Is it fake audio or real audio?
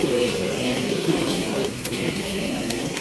fake